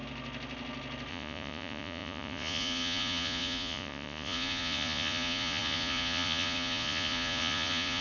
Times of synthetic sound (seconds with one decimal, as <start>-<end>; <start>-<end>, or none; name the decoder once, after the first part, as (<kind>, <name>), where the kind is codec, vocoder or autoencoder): 1.1-8.0 (vocoder, Vocos)